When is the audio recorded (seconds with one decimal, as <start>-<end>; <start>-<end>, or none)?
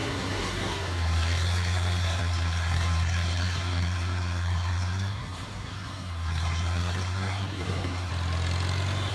8.1-9.1